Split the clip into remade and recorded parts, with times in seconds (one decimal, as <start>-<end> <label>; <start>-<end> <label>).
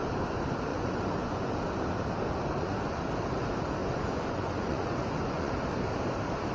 0.0-0.7 recorded; 0.7-1.5 remade; 1.5-2.5 recorded; 2.5-3.0 remade; 3.0-3.8 recorded; 3.8-5.5 remade; 5.5-6.5 recorded